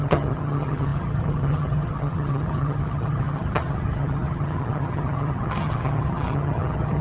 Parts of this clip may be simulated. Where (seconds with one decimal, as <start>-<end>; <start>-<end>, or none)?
0.0-7.0